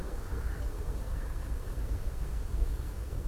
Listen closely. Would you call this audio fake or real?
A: fake